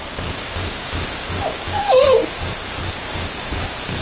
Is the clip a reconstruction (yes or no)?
yes